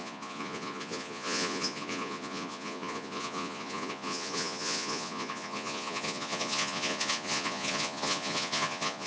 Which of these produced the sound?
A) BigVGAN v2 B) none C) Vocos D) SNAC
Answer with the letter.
C